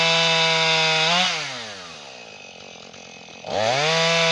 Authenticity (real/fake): real